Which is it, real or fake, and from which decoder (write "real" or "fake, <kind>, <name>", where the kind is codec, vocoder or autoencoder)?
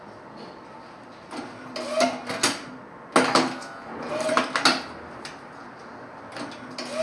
real